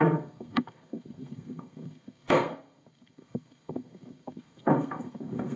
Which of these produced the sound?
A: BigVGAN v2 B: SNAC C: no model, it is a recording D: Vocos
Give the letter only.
B